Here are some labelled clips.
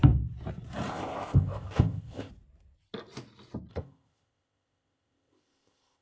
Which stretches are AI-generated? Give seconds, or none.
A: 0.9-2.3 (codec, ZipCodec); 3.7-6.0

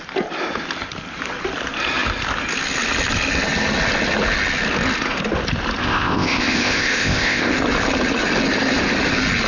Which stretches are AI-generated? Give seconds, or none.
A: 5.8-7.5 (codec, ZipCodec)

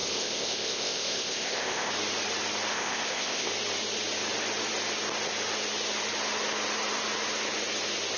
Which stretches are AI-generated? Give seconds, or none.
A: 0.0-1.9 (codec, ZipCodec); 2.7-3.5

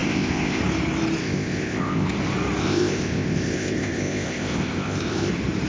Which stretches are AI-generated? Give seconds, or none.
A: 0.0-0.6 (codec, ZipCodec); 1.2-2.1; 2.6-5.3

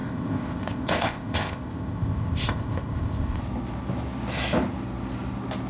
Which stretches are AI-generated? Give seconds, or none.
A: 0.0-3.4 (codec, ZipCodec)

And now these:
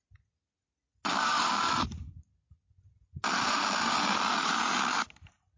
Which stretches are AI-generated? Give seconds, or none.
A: none